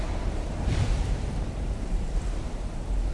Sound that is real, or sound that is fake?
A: fake